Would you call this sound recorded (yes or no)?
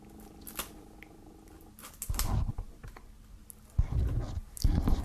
yes